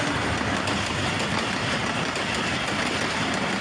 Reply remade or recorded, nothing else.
recorded